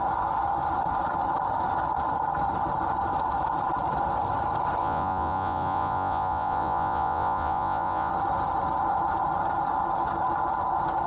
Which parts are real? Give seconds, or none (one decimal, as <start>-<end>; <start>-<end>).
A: 0.0-4.8; 8.1-11.1